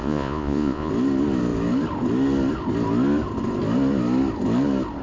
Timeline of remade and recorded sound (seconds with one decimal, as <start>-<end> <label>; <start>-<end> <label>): 0.0-0.9 remade; 0.9-5.0 recorded